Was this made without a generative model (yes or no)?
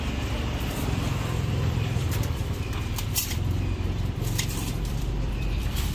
no